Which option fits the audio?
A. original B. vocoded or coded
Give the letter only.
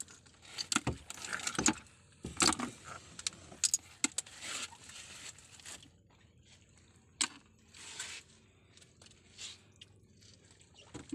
A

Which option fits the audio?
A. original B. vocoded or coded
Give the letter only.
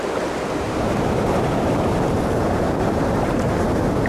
B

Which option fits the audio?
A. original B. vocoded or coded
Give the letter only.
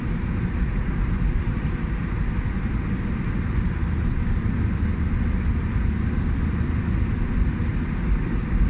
B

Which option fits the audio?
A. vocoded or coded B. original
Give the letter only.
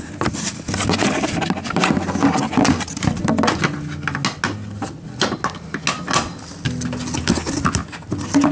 B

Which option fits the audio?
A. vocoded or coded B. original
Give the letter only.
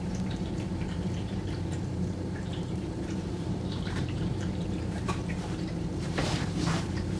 A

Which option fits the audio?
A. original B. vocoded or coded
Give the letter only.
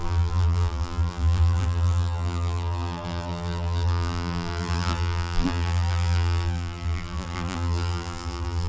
B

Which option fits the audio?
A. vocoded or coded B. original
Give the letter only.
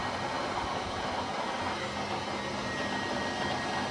B